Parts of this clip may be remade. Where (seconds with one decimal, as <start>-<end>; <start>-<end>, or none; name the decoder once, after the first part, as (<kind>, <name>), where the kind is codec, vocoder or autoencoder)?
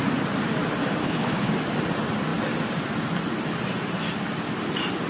1.0-1.5 (codec, HILCodec)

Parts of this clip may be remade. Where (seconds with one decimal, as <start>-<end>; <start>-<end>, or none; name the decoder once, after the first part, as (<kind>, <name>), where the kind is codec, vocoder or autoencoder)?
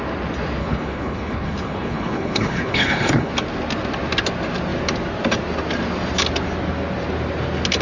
0.6-3.3 (codec, HILCodec)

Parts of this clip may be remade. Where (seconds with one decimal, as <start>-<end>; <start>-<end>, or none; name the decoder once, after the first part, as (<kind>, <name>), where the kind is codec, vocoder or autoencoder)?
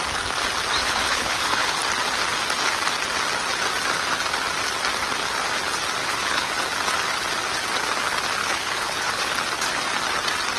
0.8-1.8 (codec, HILCodec); 6.0-6.5; 8.4-9.3